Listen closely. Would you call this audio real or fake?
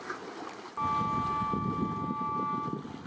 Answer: real